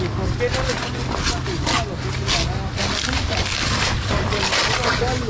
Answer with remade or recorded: recorded